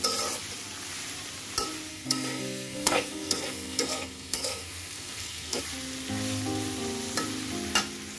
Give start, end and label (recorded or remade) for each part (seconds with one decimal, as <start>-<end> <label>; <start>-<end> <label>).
0.0-1.9 recorded; 1.9-5.6 remade; 5.6-8.2 recorded